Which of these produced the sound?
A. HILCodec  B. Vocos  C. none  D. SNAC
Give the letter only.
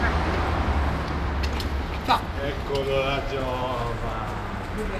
C